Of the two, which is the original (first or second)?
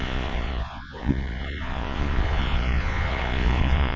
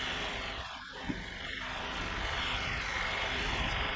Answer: second